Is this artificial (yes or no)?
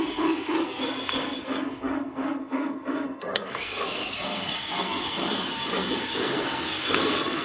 yes